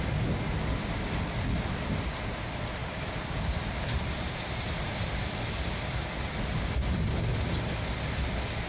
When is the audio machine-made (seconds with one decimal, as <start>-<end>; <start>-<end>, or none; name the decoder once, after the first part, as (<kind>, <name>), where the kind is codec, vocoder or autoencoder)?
2.8-7.2 (vocoder, BigVGAN v2)